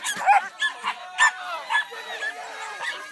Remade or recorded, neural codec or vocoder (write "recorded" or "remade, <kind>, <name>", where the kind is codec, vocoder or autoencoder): recorded